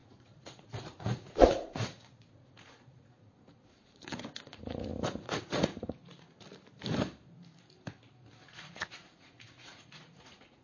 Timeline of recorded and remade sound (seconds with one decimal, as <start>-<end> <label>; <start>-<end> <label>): 0.0-6.0 remade; 6.0-8.4 recorded; 8.4-10.6 remade